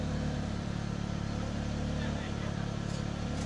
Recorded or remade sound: remade